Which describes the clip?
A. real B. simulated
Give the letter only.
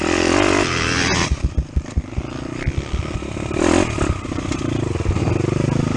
A